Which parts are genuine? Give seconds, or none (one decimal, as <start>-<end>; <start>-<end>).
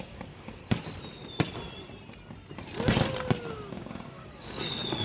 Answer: 0.6-3.5